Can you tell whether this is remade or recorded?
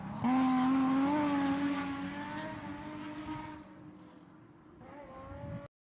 recorded